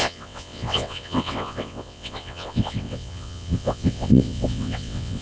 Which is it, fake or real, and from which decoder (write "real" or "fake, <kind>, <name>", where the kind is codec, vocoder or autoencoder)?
fake, vocoder, WaveNeXt